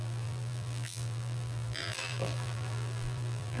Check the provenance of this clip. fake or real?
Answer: fake